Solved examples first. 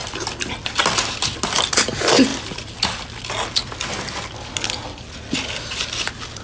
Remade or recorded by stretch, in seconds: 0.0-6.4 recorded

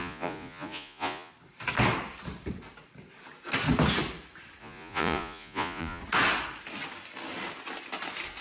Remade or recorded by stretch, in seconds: 0.0-1.3 remade; 1.3-4.6 recorded; 4.6-6.0 remade; 6.0-8.4 recorded

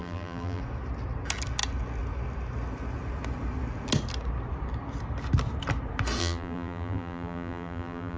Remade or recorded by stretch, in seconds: 0.0-0.6 remade; 0.6-6.2 recorded; 6.2-8.2 remade